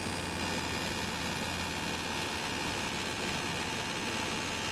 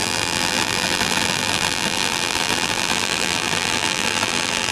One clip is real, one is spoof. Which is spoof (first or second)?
second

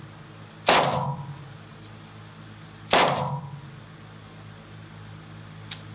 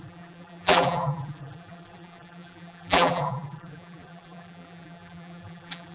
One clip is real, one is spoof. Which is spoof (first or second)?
second